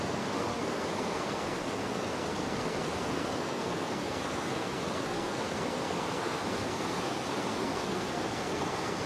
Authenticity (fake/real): fake